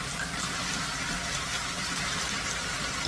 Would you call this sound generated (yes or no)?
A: no